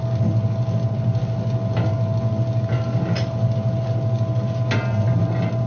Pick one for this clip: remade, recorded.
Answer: recorded